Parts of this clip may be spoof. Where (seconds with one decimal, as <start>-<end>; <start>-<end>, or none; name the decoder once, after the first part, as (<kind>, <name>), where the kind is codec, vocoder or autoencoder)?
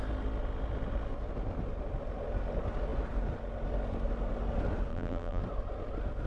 4.9-5.4 (vocoder, BigVGAN v2)